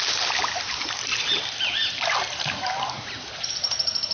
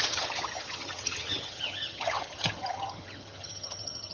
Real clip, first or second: first